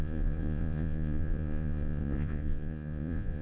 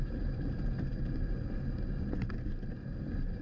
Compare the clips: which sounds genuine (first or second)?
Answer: second